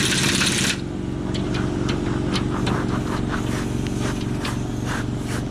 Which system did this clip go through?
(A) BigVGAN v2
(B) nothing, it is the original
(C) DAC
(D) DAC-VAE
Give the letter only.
B